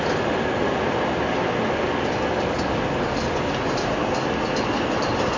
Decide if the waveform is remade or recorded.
recorded